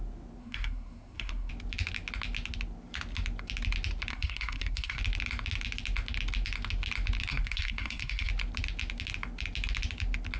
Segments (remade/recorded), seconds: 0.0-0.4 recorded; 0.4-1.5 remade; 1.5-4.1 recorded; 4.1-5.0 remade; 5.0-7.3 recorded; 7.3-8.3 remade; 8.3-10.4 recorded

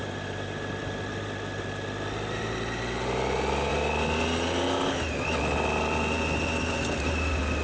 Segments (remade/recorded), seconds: 0.0-7.6 recorded

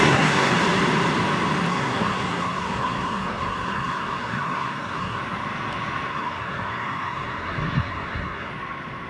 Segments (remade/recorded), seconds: 0.0-0.5 remade; 0.5-1.7 recorded; 1.7-5.2 remade; 5.2-6.1 recorded; 6.1-8.5 remade; 8.5-9.1 recorded

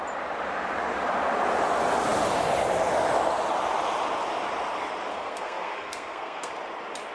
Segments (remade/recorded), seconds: 0.0-5.1 recorded; 5.1-6.5 remade; 6.5-7.1 recorded

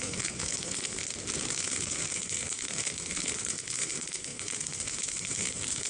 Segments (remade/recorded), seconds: 0.0-1.0 remade; 1.0-1.5 recorded; 1.5-5.9 remade

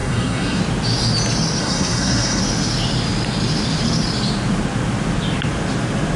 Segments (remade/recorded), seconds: 0.0-0.6 remade; 0.6-1.6 recorded; 1.6-2.4 remade; 2.4-6.2 recorded